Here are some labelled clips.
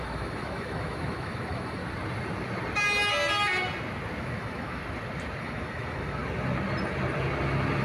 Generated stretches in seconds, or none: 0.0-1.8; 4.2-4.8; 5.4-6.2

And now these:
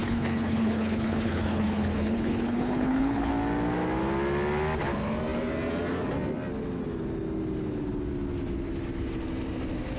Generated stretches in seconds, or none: 0.0-3.3

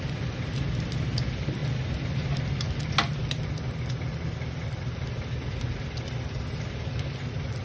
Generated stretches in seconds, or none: none

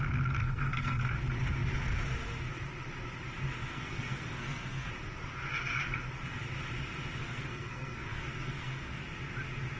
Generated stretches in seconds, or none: 0.4-1.1; 3.7-4.9; 7.2-9.0

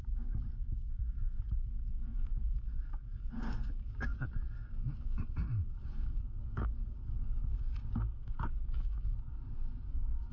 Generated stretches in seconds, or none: 0.0-10.3

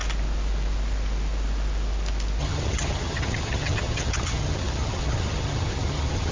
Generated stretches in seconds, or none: 2.4-6.3